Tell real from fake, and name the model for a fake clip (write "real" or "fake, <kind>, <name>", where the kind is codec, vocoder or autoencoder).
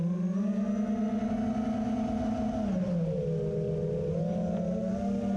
real